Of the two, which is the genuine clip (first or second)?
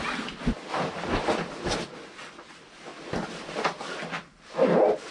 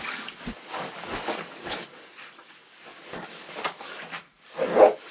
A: first